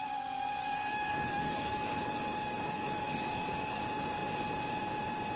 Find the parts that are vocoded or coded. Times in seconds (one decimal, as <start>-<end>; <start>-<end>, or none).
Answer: 0.6-3.8